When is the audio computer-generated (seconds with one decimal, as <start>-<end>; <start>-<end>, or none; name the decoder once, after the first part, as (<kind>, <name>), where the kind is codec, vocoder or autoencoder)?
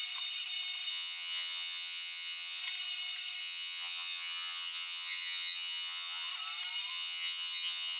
0.9-2.6 (vocoder, WaveNeXt); 3.4-6.3; 6.9-8.0